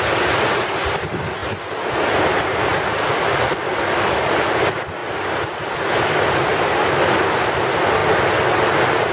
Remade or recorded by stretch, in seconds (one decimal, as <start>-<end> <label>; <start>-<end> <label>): 0.0-9.1 recorded